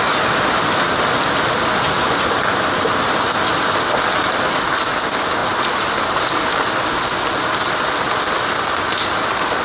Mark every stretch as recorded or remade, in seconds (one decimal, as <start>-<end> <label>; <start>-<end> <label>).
0.0-5.4 recorded; 5.4-6.2 remade; 6.2-9.6 recorded